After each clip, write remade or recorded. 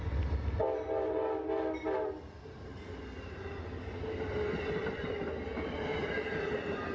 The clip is recorded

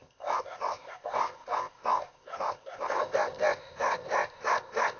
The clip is remade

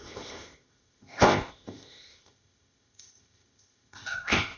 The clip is remade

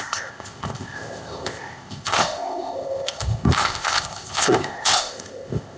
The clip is remade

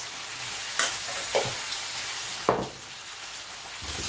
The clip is recorded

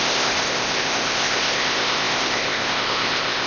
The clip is remade